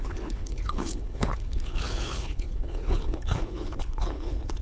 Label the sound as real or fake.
fake